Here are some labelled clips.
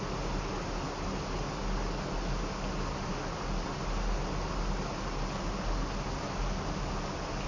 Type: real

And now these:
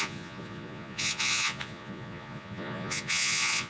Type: fake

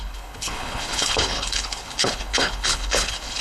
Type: fake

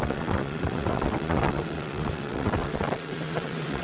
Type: fake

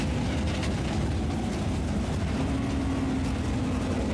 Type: real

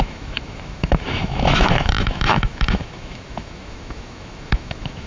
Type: fake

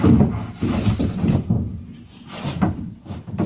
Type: real